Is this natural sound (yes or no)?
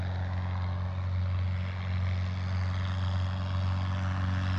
yes